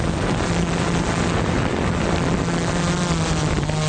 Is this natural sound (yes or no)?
yes